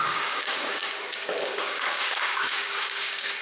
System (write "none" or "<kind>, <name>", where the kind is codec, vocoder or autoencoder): codec, DAC